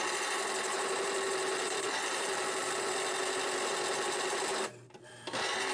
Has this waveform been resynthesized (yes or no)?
no